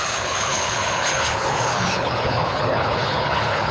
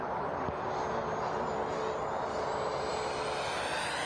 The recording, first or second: second